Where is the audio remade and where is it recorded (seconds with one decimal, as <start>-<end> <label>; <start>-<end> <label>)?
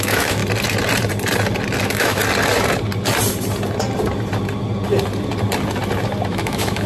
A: 0.0-0.4 remade; 0.4-1.8 recorded; 1.8-2.2 remade; 2.2-6.3 recorded; 6.3-6.9 remade